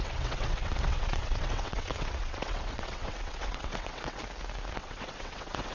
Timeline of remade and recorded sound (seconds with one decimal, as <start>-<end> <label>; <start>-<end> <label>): 0.0-4.2 remade; 4.2-4.7 recorded; 4.7-5.7 remade